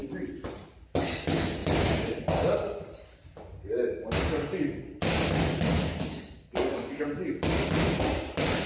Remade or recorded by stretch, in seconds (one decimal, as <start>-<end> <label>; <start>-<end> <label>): 0.0-0.5 remade; 0.5-8.7 recorded